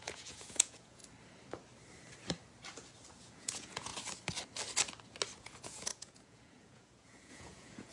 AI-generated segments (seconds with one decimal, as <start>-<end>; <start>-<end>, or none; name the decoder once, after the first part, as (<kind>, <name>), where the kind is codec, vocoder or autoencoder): 0.0-1.0 (vocoder, Vocos); 3.2-3.9; 5.4-7.9